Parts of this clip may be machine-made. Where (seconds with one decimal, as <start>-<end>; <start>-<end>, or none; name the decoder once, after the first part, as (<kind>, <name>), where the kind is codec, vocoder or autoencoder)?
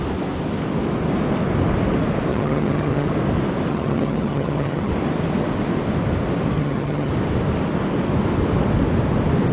2.3-3.1 (vocoder, HiFi-GAN); 3.7-4.9; 6.6-7.1